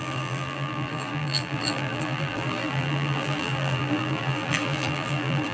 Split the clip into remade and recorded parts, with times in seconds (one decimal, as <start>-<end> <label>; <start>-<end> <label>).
0.0-5.5 remade